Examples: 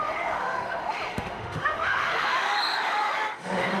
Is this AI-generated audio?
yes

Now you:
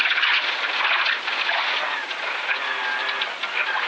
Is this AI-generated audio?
no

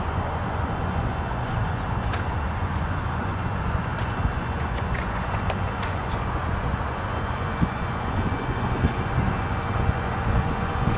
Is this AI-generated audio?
yes